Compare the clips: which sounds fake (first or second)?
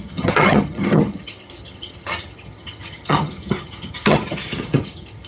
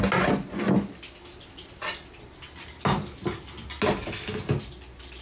first